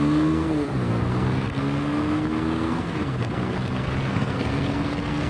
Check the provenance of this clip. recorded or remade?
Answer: remade